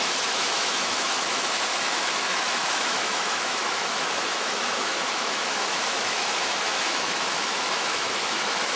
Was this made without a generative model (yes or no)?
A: no